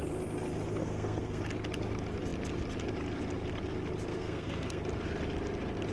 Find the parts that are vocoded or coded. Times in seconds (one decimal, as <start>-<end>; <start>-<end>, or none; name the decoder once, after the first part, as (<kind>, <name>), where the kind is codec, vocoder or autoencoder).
0.8-1.4 (codec, SNAC); 4.1-4.8